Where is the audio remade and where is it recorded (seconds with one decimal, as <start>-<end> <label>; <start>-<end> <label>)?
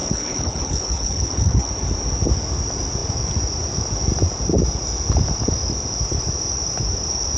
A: 0.0-1.7 remade; 1.7-7.4 recorded